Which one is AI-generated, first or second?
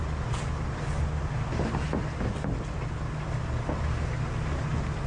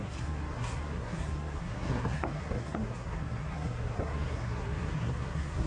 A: second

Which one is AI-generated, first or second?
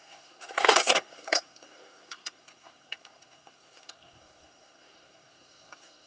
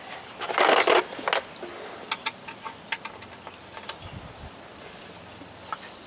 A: first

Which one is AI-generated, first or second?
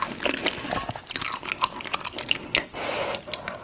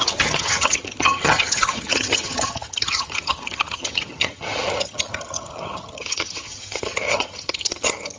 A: second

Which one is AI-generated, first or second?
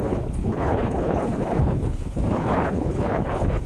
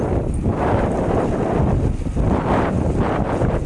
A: first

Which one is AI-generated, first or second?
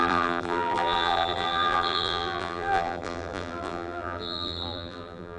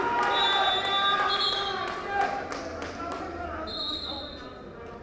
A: first